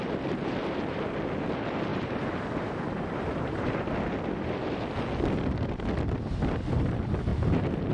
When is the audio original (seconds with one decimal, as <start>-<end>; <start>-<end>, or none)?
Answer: 0.0-1.9; 3.9-7.9